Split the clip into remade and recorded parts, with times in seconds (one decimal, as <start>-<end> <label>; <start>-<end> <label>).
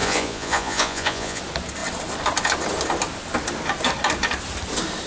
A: 0.0-1.4 remade; 1.4-5.1 recorded